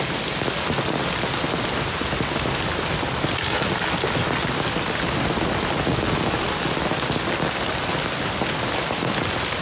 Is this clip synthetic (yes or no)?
no